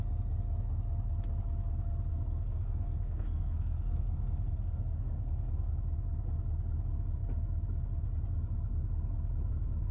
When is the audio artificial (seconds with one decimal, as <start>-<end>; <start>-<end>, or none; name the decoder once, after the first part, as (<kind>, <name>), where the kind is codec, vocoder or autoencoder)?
2.1-5.7 (codec, SNAC)